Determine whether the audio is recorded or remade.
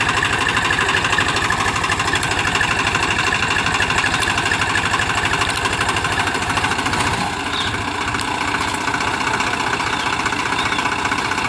recorded